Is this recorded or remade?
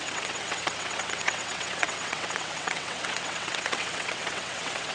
remade